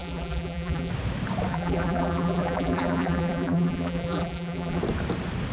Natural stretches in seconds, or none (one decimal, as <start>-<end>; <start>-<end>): 0.9-1.5; 4.8-5.5